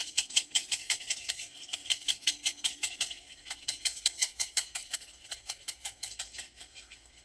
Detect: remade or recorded remade